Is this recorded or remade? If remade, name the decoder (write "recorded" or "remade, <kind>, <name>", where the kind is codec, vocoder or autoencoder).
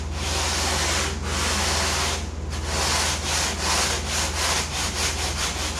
recorded